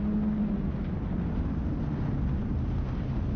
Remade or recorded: recorded